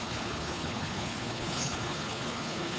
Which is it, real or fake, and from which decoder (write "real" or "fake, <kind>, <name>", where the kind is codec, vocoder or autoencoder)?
fake, codec, HILCodec